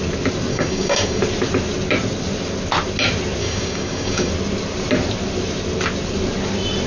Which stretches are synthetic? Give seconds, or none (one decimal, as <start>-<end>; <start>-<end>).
0.5-1.2; 3.4-4.3